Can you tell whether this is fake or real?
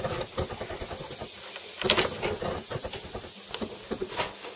real